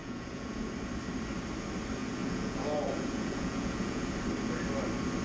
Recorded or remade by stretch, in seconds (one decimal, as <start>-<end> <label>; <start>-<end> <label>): 0.0-0.7 remade; 0.7-2.0 recorded; 2.0-4.1 remade; 4.1-5.2 recorded